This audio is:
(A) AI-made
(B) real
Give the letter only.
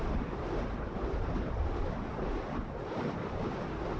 A